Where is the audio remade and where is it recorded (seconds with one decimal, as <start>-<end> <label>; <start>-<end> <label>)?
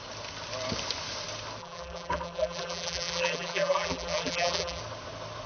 0.0-1.6 recorded; 1.6-4.8 remade; 4.8-5.5 recorded